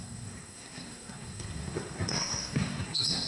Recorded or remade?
remade